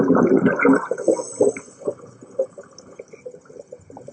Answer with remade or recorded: recorded